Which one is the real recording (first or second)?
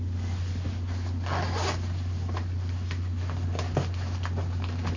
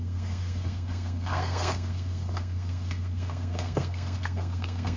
first